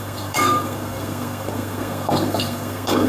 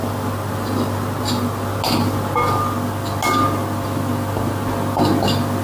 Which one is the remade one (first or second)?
first